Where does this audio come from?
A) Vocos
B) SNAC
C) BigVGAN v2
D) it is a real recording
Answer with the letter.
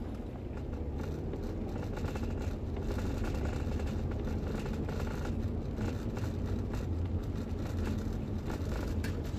D